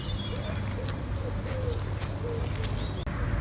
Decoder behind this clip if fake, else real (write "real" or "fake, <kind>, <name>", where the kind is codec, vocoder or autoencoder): real